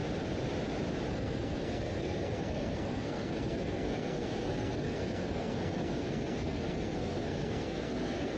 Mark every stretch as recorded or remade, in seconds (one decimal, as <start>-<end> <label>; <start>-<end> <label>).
0.0-1.1 recorded; 1.1-8.4 remade

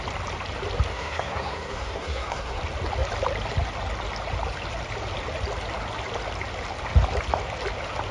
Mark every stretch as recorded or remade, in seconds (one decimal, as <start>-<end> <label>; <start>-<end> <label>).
0.0-0.9 recorded; 0.9-2.6 remade; 2.6-8.1 recorded

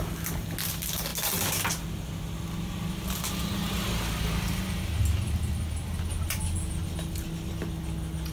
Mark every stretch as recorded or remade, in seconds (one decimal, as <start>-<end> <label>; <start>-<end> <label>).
0.0-8.3 recorded

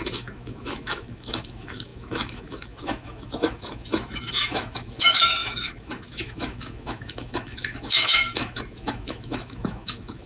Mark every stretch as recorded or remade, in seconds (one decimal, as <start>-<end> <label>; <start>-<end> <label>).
0.0-10.3 remade